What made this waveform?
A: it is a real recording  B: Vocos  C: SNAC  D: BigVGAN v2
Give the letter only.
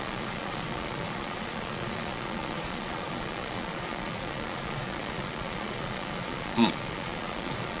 B